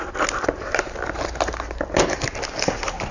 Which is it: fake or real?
real